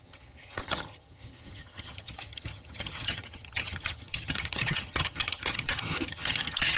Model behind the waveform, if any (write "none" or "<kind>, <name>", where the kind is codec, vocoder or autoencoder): vocoder, HiFi-GAN